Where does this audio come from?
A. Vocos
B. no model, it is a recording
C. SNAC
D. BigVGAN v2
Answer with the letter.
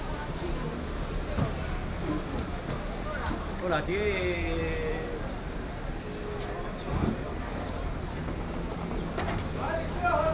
B